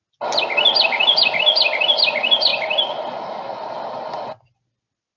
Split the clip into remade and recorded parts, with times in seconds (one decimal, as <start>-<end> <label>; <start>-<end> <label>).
0.0-5.2 recorded